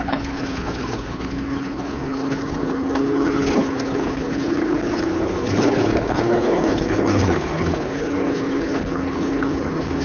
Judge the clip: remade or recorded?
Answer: remade